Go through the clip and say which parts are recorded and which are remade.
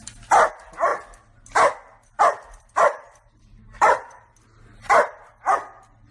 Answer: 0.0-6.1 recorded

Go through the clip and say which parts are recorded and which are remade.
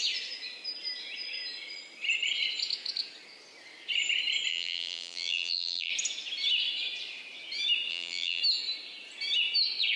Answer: 0.0-4.5 recorded; 4.5-5.9 remade; 5.9-7.9 recorded; 7.9-8.4 remade; 8.4-10.0 recorded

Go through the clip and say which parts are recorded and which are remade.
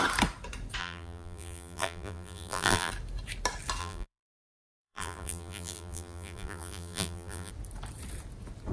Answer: 0.0-0.8 recorded; 0.8-2.9 remade; 2.9-3.8 recorded; 3.8-7.5 remade; 7.5-8.7 recorded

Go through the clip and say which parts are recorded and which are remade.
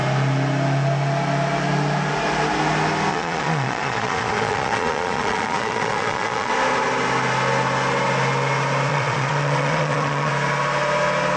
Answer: 0.0-3.1 recorded; 3.1-6.5 remade; 6.5-8.9 recorded; 8.9-10.3 remade; 10.3-11.4 recorded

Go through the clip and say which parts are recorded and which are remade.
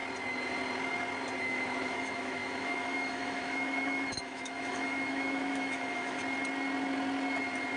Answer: 0.0-1.4 recorded; 1.4-6.2 remade; 6.2-7.8 recorded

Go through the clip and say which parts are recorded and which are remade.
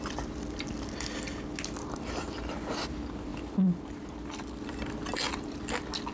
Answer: 0.0-6.1 recorded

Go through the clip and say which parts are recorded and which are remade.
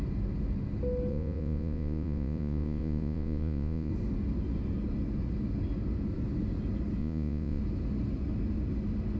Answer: 0.0-1.1 recorded; 1.1-3.9 remade; 3.9-7.0 recorded; 7.0-7.6 remade; 7.6-9.2 recorded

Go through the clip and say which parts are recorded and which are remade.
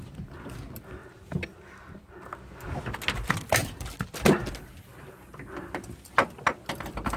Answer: 0.0-3.6 recorded; 3.6-4.5 remade; 4.5-7.2 recorded